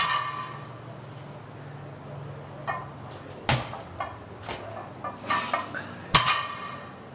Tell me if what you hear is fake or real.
real